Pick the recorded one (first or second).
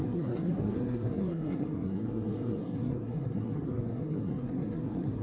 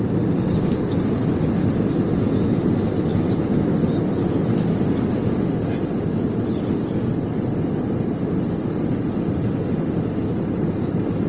second